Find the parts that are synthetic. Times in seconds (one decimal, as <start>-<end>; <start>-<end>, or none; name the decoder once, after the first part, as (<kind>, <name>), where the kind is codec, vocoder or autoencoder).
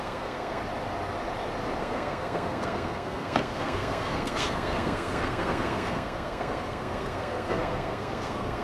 0.0-0.6 (codec, SNAC); 1.8-8.6